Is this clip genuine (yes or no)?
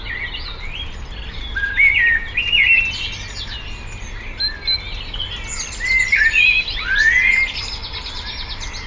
yes